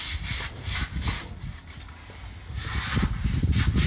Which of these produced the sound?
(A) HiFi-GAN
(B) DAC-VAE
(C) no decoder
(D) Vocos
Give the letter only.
C